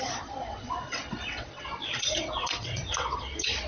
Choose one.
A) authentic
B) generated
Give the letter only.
B